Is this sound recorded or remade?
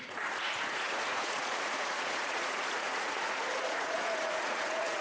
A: remade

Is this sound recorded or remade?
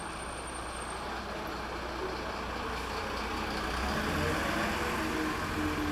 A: recorded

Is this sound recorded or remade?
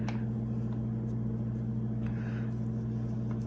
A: recorded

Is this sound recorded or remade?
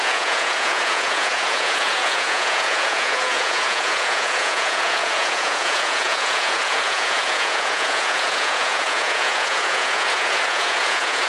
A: remade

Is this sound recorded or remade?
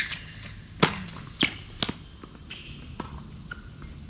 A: recorded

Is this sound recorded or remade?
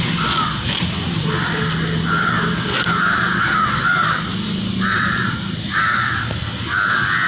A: recorded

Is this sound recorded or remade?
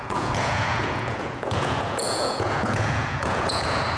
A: remade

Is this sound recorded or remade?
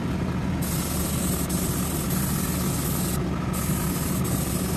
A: recorded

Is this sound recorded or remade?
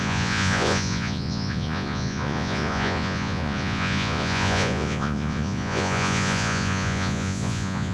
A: remade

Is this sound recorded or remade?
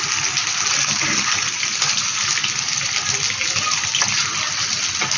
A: recorded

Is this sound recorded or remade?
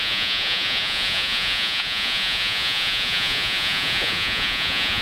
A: remade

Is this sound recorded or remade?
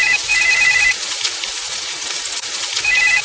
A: remade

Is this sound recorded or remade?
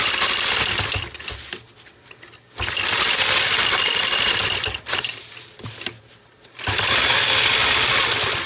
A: recorded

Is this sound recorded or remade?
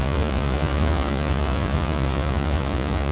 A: remade